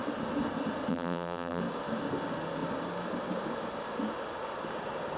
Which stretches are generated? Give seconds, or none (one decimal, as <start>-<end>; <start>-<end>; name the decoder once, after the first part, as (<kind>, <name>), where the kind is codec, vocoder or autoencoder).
0.9-1.6 (vocoder, BigVGAN v2)